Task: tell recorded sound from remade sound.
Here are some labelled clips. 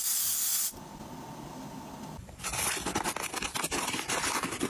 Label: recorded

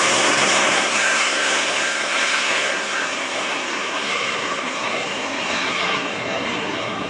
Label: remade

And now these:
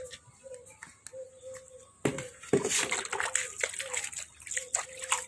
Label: recorded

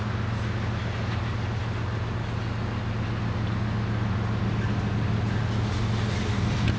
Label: recorded